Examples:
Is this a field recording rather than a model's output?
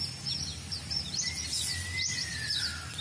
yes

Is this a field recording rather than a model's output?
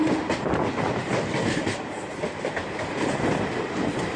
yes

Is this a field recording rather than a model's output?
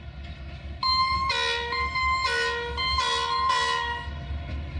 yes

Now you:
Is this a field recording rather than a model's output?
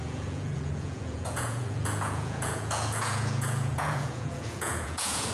no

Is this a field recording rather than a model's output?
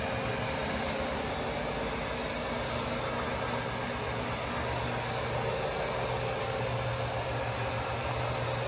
yes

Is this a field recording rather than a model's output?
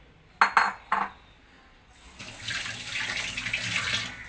yes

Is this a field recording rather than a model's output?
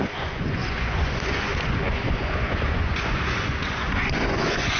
no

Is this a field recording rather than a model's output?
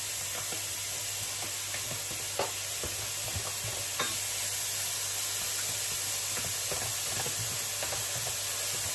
yes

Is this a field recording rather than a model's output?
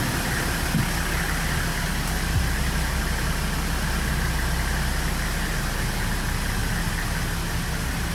yes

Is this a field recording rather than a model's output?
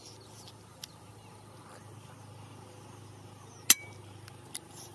yes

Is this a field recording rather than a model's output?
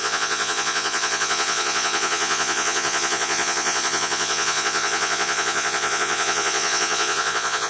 no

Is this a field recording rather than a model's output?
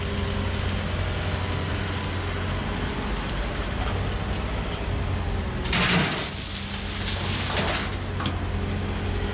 yes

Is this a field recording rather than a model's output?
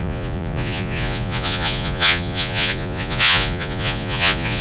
no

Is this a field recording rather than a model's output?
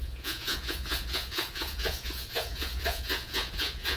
no